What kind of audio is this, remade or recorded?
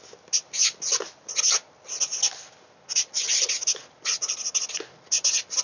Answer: recorded